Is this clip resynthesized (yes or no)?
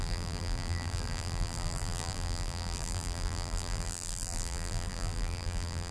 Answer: yes